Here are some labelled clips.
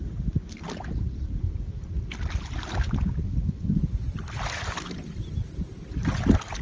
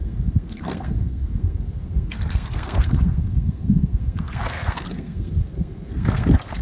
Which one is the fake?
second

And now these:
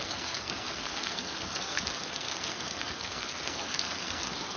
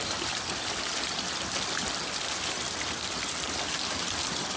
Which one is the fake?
first